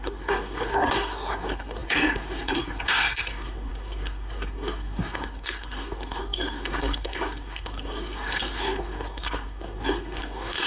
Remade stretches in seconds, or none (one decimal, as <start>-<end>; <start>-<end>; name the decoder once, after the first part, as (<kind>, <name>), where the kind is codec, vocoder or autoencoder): 0.0-10.7 (codec, SNAC)